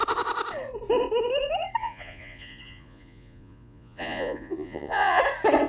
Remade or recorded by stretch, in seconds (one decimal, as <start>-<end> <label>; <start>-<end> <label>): 0.0-1.8 recorded; 1.8-5.2 remade; 5.2-5.7 recorded